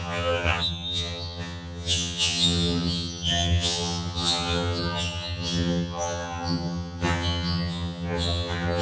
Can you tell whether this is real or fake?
fake